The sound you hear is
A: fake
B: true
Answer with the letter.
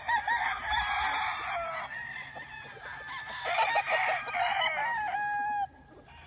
B